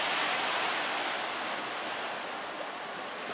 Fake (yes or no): no